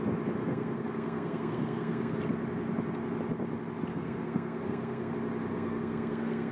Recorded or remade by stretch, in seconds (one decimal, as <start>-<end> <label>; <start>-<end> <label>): 0.0-0.4 recorded; 0.4-2.2 remade; 2.2-3.9 recorded; 3.9-5.1 remade; 5.1-5.5 recorded; 5.5-6.5 remade